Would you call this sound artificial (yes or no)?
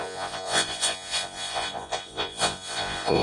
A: yes